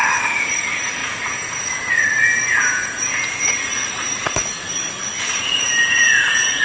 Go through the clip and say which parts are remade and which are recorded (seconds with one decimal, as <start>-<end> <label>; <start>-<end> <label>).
0.0-1.0 recorded; 1.0-1.9 remade; 1.9-2.5 recorded; 2.5-3.5 remade; 3.5-5.4 recorded; 5.4-6.6 remade